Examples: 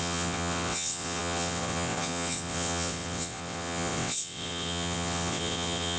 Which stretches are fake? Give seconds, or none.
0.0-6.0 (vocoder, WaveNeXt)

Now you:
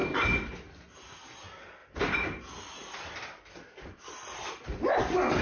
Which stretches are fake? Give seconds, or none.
1.8-5.0 (vocoder, BigVGAN v2)

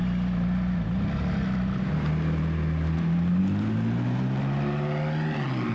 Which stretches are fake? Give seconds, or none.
none

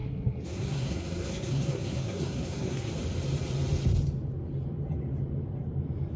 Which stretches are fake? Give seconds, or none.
0.0-2.9 (codec, SNAC)

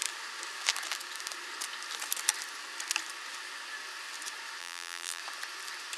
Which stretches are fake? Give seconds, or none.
4.6-5.2 (vocoder, BigVGAN v2)

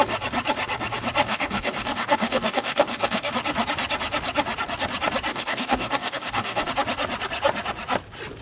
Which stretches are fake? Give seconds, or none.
1.2-3.3 (codec, DAC); 5.3-6.7

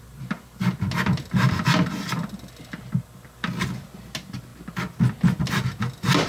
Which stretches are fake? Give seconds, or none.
none

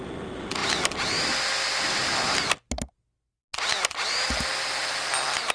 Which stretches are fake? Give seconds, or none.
none